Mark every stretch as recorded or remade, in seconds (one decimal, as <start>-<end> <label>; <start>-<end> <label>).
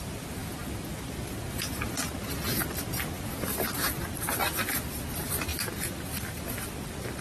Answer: 0.0-0.4 remade; 0.4-4.1 recorded; 4.1-5.5 remade; 5.5-6.1 recorded; 6.1-7.2 remade